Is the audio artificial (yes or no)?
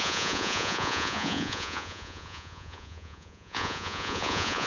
yes